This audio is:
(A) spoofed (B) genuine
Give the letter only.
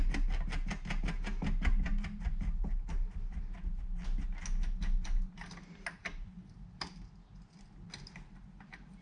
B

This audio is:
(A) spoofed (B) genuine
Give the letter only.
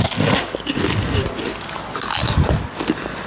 B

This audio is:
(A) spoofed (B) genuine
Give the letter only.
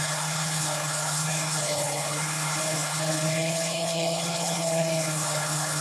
A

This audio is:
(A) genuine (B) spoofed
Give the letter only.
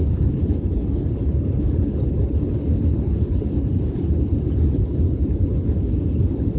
B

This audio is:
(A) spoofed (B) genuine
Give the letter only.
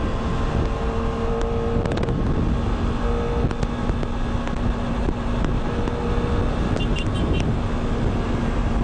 B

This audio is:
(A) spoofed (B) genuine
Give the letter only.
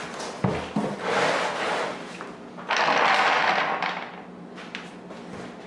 B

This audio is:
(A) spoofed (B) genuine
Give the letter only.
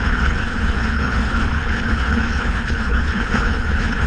A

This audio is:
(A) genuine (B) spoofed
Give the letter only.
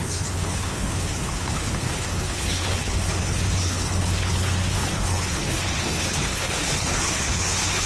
B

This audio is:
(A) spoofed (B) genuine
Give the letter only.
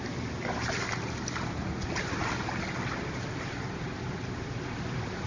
B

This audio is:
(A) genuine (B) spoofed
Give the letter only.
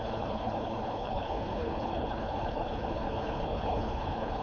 B